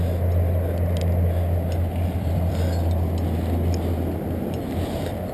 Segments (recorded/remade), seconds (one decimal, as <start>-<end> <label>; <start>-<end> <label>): 0.0-1.9 recorded; 1.9-2.5 remade; 2.5-5.3 recorded